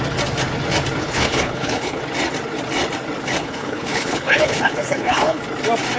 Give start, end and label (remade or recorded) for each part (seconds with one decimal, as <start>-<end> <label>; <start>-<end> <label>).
0.0-1.0 recorded; 1.0-2.0 remade; 2.0-3.4 recorded; 3.4-5.4 remade; 5.4-6.0 recorded